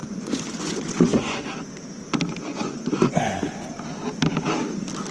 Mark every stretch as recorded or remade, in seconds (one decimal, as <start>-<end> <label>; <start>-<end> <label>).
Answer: 0.0-1.4 remade; 1.4-2.5 recorded; 2.5-3.2 remade; 3.2-5.1 recorded